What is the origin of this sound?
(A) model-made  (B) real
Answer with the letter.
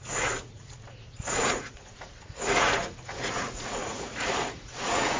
A